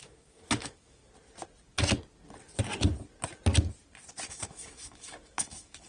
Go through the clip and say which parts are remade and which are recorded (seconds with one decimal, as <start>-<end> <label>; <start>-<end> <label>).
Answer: 0.0-1.0 remade; 1.0-4.3 recorded; 4.3-5.9 remade